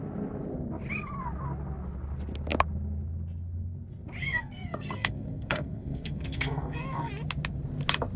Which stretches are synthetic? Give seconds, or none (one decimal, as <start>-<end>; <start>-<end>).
4.2-7.1